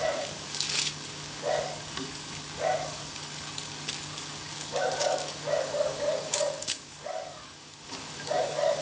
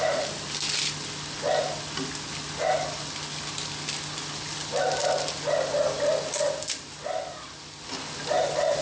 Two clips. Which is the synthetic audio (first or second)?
first